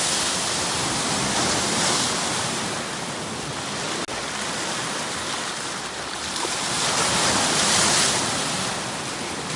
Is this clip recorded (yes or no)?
yes